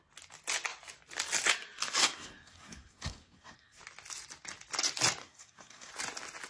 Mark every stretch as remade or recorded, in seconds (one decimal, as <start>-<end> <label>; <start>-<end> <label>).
0.0-2.0 recorded; 2.0-3.8 remade; 3.8-5.2 recorded; 5.2-5.9 remade; 5.9-6.5 recorded